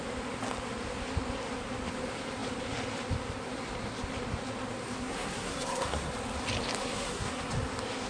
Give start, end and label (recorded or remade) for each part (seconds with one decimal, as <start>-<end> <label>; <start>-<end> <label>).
0.0-5.0 recorded; 5.0-6.1 remade; 6.1-6.8 recorded; 6.8-7.5 remade; 7.5-8.1 recorded